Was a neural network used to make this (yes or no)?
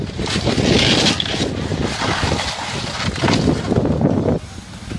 no